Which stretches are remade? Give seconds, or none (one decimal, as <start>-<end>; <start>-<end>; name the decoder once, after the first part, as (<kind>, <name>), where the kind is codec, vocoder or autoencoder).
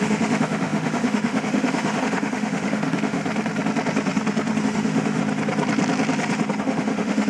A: 0.0-3.2 (autoencoder, DAC-VAE); 4.6-5.2; 6.6-7.3